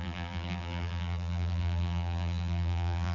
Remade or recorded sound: remade